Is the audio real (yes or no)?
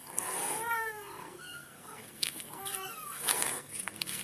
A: no